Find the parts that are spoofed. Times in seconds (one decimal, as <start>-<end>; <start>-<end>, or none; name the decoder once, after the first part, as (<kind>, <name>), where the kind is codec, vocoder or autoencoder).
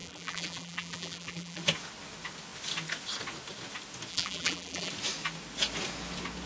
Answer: 0.0-1.6 (vocoder, BigVGAN v2); 4.1-4.9